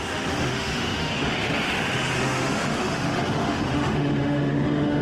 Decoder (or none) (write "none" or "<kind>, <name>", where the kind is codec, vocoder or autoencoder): autoencoder, DAC-VAE